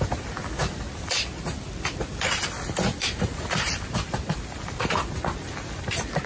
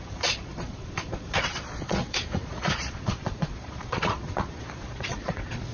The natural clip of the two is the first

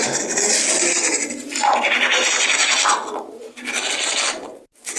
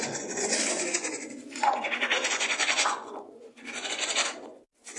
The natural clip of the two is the first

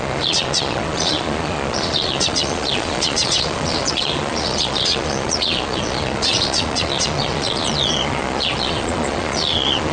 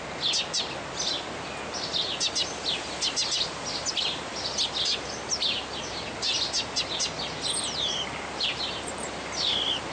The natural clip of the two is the second